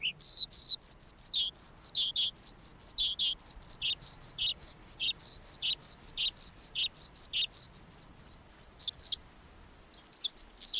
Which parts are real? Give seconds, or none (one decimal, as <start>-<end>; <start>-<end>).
0.0-4.5; 5.2-10.8